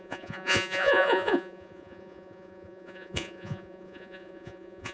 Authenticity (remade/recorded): remade